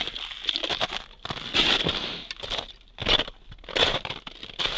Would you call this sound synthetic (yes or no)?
no